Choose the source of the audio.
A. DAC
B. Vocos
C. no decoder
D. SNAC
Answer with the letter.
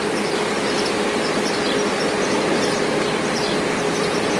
C